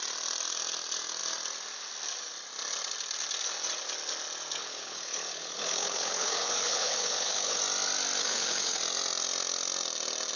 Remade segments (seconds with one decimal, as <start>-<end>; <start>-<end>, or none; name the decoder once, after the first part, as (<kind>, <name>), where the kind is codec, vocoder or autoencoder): 4.6-7.6 (codec, HILCodec); 8.2-8.8